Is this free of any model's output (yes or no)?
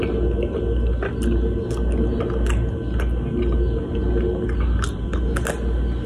yes